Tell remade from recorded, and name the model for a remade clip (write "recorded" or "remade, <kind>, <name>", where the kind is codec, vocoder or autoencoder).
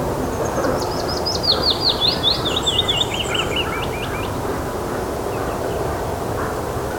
recorded